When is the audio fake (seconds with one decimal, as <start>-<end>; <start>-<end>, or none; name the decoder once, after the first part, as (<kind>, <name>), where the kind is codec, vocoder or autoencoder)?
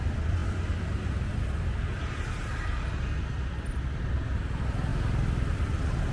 none